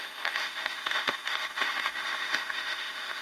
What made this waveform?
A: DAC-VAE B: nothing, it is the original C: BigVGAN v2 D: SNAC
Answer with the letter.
A